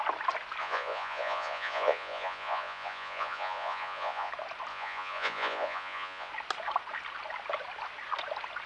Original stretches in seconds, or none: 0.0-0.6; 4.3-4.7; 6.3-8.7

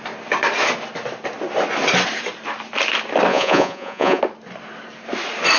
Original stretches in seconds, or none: 0.0-3.3; 4.2-5.6